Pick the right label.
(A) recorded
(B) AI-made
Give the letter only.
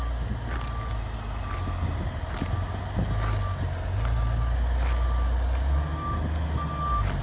A